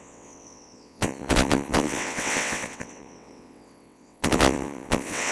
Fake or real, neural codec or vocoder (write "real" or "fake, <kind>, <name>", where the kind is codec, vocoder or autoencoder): fake, vocoder, WaveNeXt